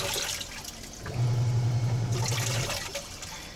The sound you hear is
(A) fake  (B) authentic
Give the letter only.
B